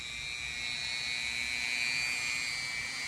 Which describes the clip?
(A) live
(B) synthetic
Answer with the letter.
A